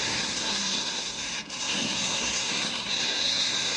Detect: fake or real fake